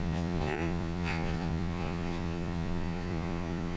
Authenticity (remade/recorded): remade